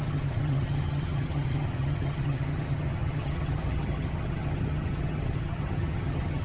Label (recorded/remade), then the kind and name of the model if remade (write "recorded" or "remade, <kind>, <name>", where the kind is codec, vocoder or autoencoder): remade, vocoder, HiFi-GAN